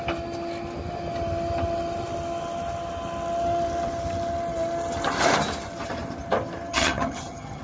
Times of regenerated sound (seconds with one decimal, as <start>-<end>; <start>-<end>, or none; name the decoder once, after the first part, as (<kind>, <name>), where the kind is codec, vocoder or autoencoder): 6.7-7.6 (vocoder, HiFi-GAN)